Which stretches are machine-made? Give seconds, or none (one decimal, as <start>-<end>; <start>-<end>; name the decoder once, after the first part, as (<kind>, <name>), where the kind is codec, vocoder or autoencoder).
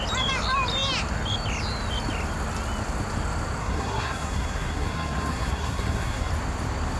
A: 3.6-6.3 (codec, SNAC)